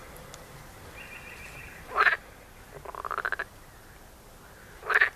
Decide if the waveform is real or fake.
real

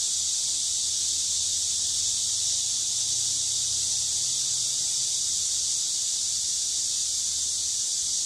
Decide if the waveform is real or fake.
real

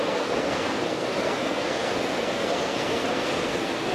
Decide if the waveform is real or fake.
fake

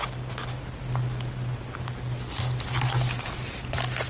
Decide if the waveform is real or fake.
real